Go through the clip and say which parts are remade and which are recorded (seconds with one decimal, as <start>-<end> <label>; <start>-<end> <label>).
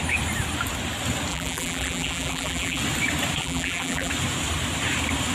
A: 0.0-1.3 recorded; 1.3-2.8 remade; 2.8-3.4 recorded; 3.4-4.1 remade; 4.1-5.3 recorded